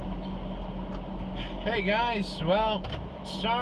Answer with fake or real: real